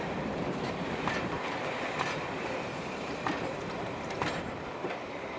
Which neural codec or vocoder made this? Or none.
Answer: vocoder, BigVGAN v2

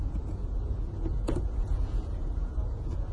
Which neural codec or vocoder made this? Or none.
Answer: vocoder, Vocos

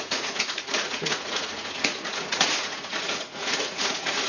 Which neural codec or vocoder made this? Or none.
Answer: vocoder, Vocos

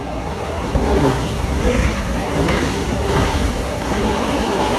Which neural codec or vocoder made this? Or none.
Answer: codec, SNAC